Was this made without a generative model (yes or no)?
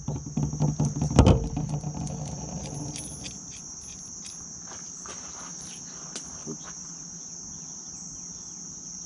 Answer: yes